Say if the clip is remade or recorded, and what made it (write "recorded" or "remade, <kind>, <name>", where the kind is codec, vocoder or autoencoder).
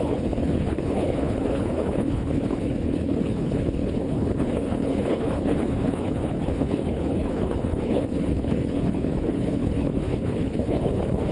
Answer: remade, codec, HILCodec